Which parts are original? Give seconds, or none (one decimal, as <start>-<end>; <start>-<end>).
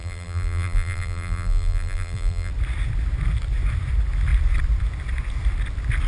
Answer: 2.5-6.1